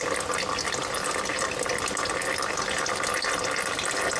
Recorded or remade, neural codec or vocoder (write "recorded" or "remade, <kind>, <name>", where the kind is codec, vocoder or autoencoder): recorded